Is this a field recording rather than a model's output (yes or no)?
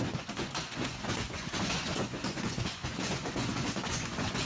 no